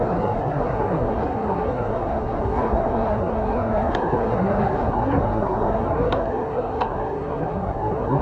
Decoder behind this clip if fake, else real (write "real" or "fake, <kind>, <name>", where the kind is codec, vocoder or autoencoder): fake, codec, SNAC